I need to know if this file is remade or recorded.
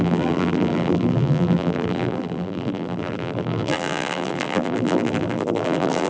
remade